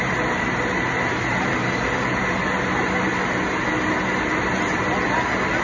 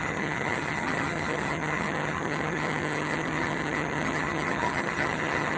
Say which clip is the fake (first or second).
second